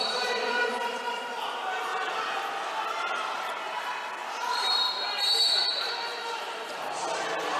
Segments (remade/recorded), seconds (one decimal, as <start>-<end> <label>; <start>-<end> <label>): 0.0-4.2 recorded; 4.2-5.8 remade; 5.8-7.6 recorded